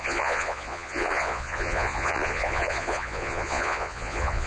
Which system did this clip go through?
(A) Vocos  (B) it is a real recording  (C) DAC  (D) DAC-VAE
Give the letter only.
A